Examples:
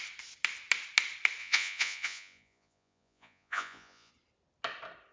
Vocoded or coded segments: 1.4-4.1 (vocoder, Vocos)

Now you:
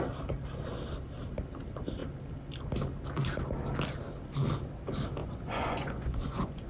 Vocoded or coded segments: 5.2-6.7 (vocoder, Vocos)